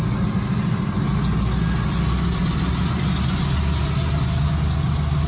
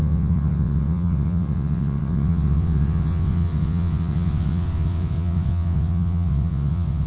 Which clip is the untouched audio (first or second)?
first